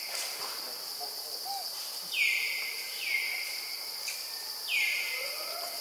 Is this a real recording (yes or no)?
yes